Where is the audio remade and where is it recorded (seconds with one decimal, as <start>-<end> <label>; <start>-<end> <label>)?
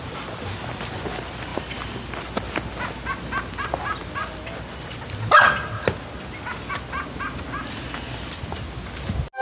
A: 0.0-9.4 recorded